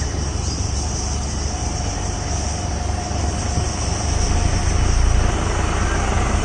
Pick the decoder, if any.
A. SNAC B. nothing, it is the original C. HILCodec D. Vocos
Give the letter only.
B